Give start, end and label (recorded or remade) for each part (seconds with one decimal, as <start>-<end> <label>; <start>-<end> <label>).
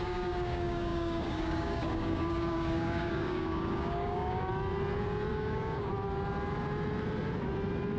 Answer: 0.0-4.5 remade; 4.5-5.3 recorded; 5.3-5.9 remade; 5.9-8.0 recorded